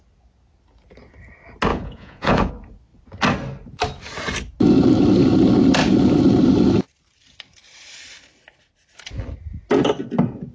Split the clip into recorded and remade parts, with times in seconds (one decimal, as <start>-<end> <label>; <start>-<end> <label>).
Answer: 0.0-1.7 recorded; 1.7-2.5 remade; 2.5-10.5 recorded